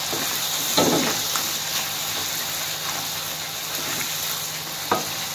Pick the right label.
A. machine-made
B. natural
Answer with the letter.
B